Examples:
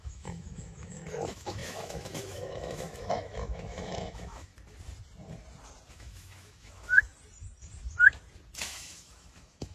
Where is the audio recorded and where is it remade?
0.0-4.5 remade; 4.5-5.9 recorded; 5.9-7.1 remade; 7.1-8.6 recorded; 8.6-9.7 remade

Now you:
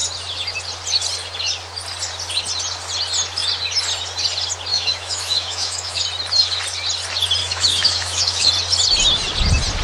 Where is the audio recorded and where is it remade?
0.0-4.7 recorded; 4.7-6.0 remade; 6.0-7.4 recorded; 7.4-8.5 remade; 8.5-9.8 recorded

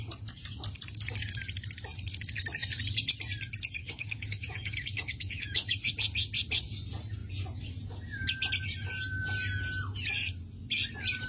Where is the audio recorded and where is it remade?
0.0-3.8 recorded; 3.8-5.9 remade; 5.9-11.3 recorded

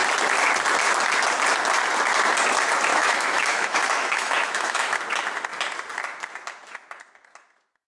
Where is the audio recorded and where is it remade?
0.0-2.9 recorded; 2.9-5.0 remade; 5.0-7.9 recorded

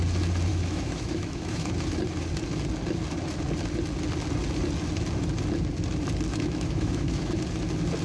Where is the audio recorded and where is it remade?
0.0-0.5 recorded; 0.5-1.7 remade; 1.7-6.3 recorded; 6.3-7.4 remade; 7.4-8.0 recorded

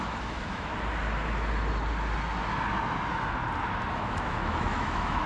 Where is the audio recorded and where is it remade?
0.0-0.7 remade; 0.7-3.9 recorded; 3.9-5.3 remade

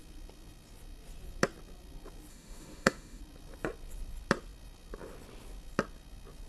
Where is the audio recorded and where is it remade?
0.0-2.3 recorded; 2.3-3.2 remade; 3.2-6.5 recorded